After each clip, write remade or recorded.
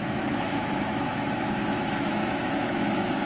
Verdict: remade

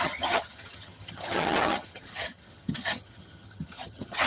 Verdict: remade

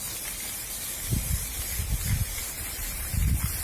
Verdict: remade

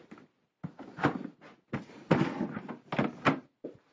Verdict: recorded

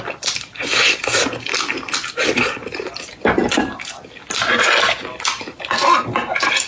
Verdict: recorded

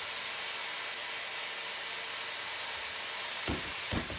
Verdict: recorded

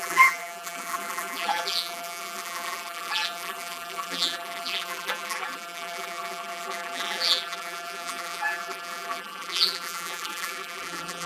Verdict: remade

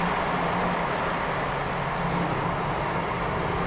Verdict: recorded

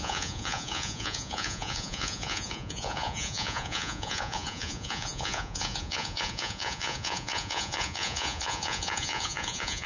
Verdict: remade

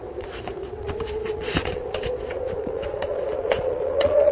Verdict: remade